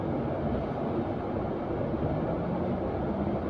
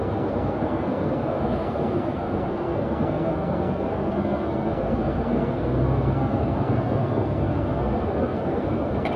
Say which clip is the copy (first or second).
second